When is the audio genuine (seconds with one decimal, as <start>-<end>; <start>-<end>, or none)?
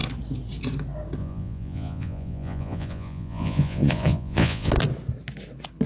0.0-1.2; 4.7-5.9